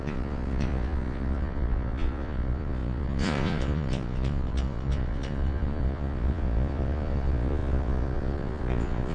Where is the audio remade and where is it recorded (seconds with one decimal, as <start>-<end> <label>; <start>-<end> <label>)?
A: 0.0-9.1 remade